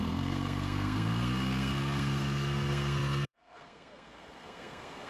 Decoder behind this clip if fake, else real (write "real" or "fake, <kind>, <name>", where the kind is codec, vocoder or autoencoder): fake, codec, SNAC